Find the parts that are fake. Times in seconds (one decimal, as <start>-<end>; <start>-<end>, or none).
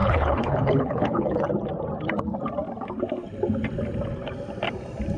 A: 0.0-1.5